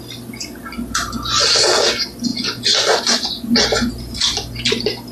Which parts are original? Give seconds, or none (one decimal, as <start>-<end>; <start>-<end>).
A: 0.0-2.3; 3.9-5.1